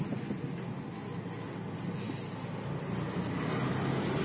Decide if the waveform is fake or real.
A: real